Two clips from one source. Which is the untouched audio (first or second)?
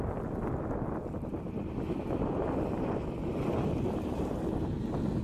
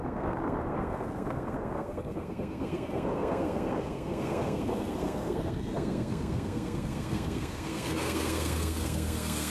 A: first